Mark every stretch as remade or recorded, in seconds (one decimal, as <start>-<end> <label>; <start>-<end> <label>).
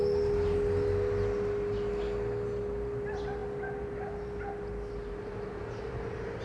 0.0-6.4 recorded